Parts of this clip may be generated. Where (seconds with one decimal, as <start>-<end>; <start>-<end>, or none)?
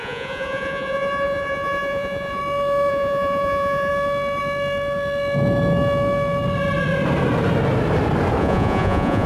0.0-2.4; 2.9-3.9; 8.4-9.3